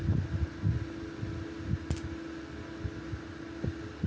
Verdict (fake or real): real